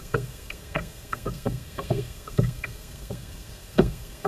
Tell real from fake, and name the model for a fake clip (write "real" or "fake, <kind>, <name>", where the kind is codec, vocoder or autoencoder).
fake, codec, SNAC